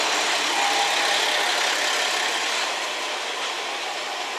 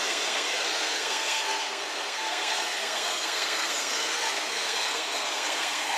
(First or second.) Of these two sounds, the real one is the first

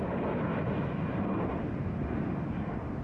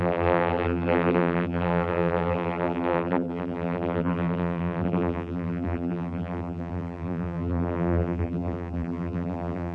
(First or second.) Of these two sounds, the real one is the first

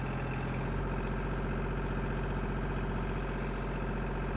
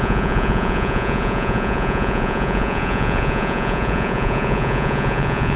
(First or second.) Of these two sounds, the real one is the first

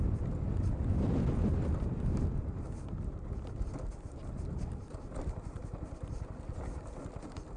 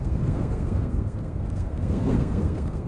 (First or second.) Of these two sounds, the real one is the first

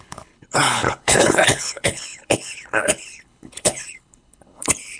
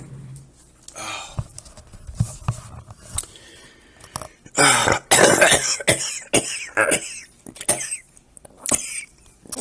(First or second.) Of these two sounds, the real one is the second